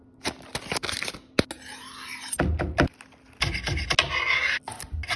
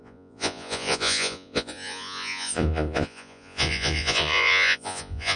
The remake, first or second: second